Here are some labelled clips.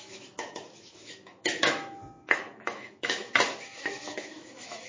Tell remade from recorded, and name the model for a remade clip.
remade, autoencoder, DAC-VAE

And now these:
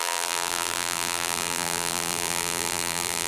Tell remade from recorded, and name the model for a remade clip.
remade, vocoder, BigVGAN v2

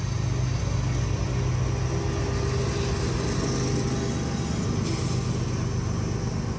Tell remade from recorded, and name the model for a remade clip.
recorded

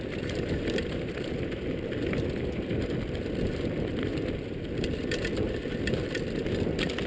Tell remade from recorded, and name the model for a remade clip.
remade, vocoder, BigVGAN v2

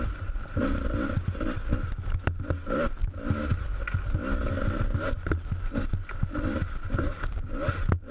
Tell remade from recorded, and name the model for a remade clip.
recorded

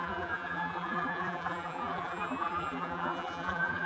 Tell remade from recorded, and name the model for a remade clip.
remade, vocoder, BigVGAN v2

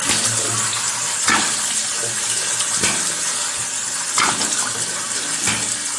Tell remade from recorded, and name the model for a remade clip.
recorded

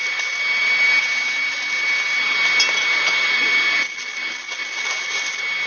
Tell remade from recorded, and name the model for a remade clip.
recorded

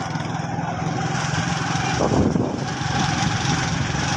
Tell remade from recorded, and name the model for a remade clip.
recorded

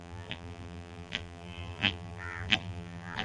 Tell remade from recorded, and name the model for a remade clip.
remade, vocoder, BigVGAN v2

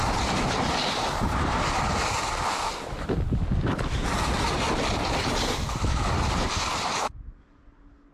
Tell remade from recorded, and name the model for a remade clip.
recorded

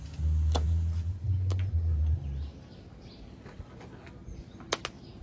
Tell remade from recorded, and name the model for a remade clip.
recorded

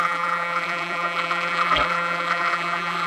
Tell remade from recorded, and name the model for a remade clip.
remade, vocoder, BigVGAN v2